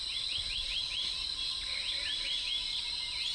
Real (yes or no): yes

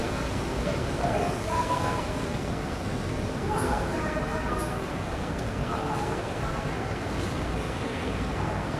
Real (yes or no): no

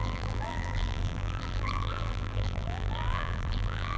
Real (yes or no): no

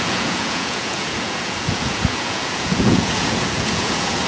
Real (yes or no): no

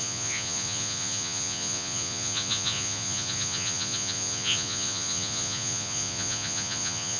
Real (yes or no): no